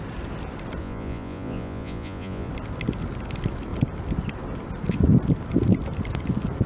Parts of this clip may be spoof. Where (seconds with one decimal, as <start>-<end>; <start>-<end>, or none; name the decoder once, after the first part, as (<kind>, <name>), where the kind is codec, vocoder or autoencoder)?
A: 0.8-2.5 (vocoder, Vocos)